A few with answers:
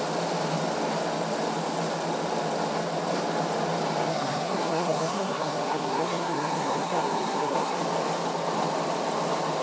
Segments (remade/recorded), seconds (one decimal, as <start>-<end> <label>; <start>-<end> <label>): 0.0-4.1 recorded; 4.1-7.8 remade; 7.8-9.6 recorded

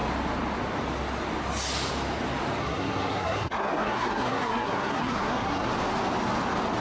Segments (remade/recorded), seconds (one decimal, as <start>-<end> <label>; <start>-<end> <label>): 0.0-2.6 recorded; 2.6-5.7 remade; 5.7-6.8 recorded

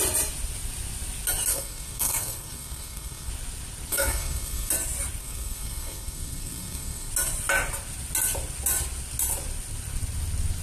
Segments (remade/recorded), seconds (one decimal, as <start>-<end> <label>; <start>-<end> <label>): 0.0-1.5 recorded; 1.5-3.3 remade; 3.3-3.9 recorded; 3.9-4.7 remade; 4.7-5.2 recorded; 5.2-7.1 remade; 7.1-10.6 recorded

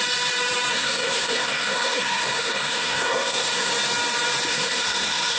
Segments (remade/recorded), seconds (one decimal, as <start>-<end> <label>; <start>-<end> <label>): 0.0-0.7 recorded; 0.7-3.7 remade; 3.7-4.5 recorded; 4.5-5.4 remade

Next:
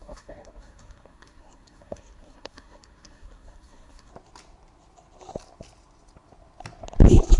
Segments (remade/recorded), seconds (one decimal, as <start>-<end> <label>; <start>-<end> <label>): 0.0-4.1 remade; 4.1-7.4 recorded

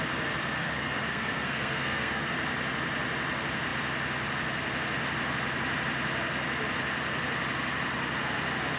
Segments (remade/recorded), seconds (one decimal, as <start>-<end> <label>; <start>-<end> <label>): 0.0-0.6 recorded; 0.6-2.3 remade; 2.3-8.8 recorded

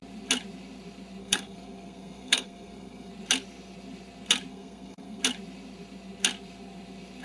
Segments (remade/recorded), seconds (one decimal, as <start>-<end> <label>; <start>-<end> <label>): 0.0-1.2 recorded; 1.2-3.1 remade; 3.1-4.5 recorded; 4.5-5.2 remade; 5.2-7.2 recorded

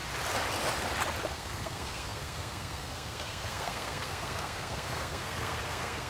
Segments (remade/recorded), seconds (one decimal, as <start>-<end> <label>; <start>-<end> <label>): 0.0-1.3 recorded; 1.3-6.1 remade